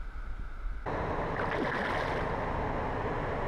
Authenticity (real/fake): real